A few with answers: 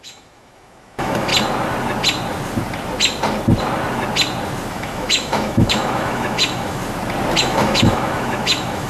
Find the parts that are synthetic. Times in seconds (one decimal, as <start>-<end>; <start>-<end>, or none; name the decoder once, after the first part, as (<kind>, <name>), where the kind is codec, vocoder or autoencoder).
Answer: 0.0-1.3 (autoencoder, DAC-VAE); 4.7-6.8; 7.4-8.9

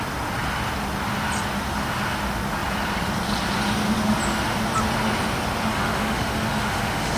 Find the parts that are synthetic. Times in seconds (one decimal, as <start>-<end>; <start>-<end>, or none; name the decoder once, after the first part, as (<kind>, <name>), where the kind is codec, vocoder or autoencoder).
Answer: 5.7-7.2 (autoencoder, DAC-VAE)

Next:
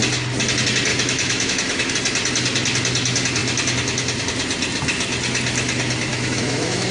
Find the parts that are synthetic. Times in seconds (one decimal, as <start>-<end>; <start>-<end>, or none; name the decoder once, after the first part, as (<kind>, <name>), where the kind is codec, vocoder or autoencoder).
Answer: 0.9-1.9 (autoencoder, DAC-VAE); 6.1-6.9